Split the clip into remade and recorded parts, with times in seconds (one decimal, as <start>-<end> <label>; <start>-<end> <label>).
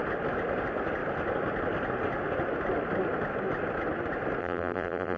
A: 0.0-4.4 recorded; 4.4-5.2 remade